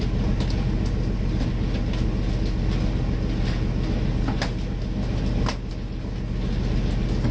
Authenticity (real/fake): real